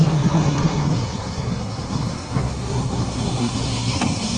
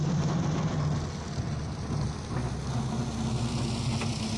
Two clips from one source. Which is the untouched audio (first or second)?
second